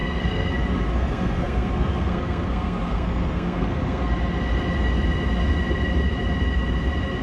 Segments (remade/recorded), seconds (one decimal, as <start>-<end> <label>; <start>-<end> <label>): 0.0-0.5 remade; 0.5-1.0 recorded; 1.0-4.1 remade; 4.1-7.2 recorded